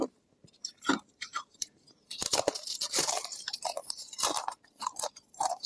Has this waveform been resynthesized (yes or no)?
yes